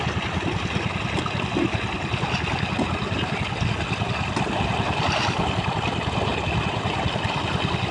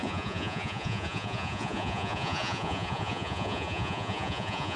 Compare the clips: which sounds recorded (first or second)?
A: first